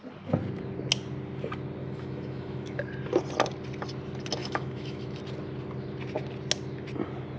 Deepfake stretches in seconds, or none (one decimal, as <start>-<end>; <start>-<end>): 1.8-2.8; 4.4-5.2